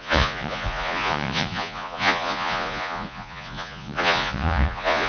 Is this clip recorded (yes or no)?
no